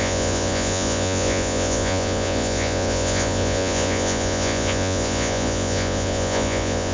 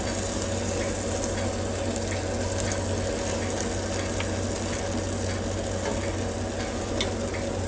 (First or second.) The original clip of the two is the second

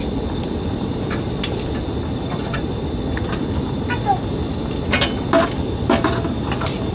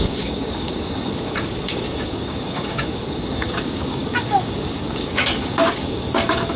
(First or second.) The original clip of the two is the first